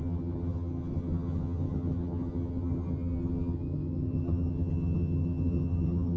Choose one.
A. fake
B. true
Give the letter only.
A